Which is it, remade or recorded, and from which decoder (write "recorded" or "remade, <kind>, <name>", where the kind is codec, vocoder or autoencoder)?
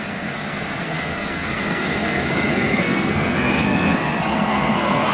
remade, codec, SNAC